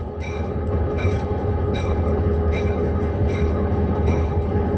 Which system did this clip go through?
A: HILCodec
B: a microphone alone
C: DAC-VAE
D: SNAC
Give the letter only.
A